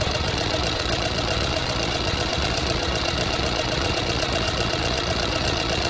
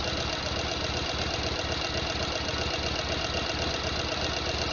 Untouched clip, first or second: second